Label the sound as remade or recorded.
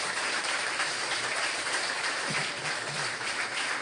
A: remade